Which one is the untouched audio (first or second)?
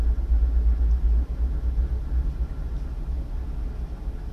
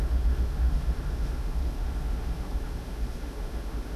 first